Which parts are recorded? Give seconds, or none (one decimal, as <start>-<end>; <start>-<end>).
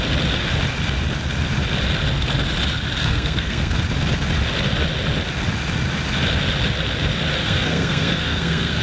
0.0-3.0; 3.7-7.4